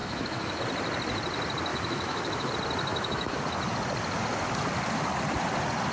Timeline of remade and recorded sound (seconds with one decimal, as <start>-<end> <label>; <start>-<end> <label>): 0.0-0.6 remade; 0.6-1.7 recorded; 1.7-2.5 remade; 2.5-2.9 recorded; 2.9-3.4 remade; 3.4-5.9 recorded